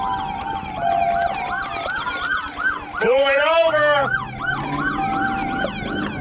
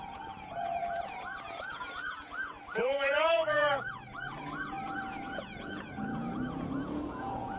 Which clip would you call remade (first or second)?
second